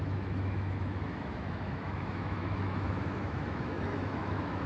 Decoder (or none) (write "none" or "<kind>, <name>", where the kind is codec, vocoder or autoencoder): autoencoder, DAC-VAE